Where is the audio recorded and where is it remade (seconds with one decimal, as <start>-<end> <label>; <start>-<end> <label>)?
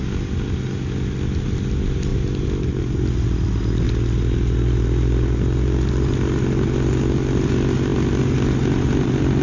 0.0-9.4 recorded